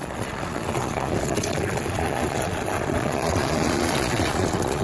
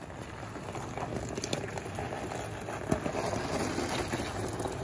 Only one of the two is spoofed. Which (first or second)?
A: first